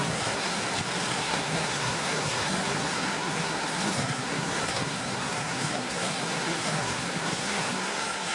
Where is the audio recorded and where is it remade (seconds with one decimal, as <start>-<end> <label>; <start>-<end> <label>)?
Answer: 0.0-0.6 remade; 0.6-1.1 recorded; 1.1-8.3 remade